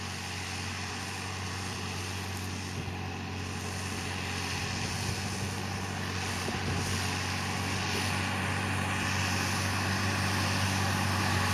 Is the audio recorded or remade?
recorded